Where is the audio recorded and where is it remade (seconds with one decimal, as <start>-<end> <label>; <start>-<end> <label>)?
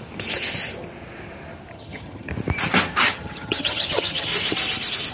0.0-1.7 recorded; 1.7-2.3 remade; 2.3-3.0 recorded; 3.0-4.3 remade; 4.3-5.1 recorded